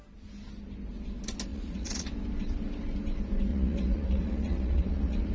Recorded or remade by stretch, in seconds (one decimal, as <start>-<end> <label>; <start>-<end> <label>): 0.0-1.5 recorded; 1.5-2.1 remade; 2.1-3.5 recorded; 3.5-5.3 remade